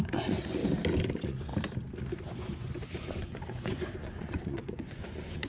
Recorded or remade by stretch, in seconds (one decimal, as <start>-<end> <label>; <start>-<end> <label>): 0.0-0.6 remade; 0.6-1.1 recorded; 1.1-1.5 remade; 1.5-2.2 recorded; 2.2-5.5 remade